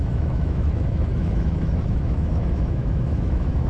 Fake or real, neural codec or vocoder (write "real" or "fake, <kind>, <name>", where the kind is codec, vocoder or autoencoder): fake, autoencoder, DAC-VAE